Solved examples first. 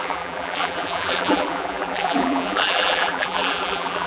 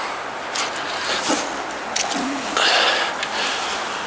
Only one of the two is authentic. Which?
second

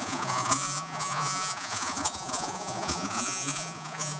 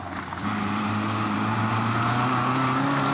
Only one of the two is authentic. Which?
second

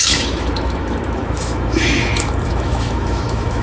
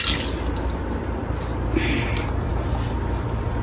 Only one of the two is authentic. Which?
second